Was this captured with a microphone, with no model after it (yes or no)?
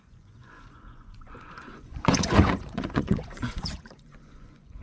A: no